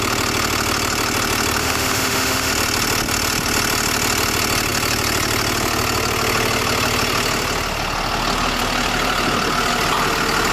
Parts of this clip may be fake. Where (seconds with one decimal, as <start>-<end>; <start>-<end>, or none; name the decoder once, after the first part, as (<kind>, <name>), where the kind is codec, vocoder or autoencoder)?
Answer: 1.6-2.5 (autoencoder, DAC-VAE)